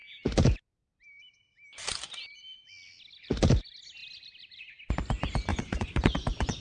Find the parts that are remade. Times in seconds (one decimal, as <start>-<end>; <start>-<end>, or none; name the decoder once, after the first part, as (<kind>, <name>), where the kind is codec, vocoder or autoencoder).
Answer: 5.5-6.6 (vocoder, Vocos)